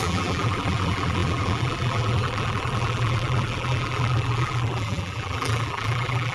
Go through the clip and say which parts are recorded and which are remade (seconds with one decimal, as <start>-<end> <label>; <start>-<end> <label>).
0.0-6.3 remade